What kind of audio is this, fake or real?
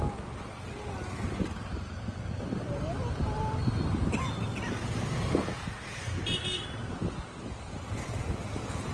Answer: real